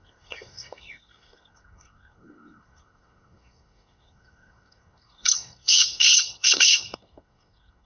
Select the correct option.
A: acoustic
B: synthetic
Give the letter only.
B